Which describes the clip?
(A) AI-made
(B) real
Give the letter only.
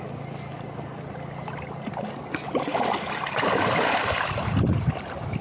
B